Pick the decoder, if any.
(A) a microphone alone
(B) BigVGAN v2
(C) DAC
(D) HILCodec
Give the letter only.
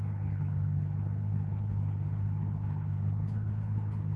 D